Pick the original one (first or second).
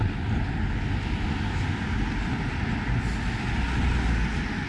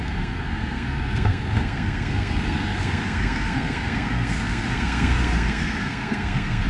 first